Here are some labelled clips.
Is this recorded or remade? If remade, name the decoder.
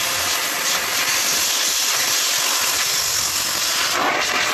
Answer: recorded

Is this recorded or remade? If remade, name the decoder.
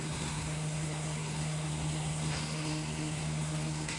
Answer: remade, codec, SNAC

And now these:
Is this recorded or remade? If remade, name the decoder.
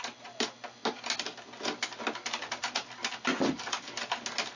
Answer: recorded